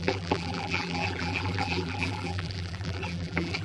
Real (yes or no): no